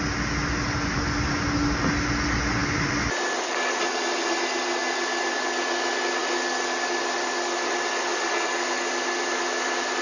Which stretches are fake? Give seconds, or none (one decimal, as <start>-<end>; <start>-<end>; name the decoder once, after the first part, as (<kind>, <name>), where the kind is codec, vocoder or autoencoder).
none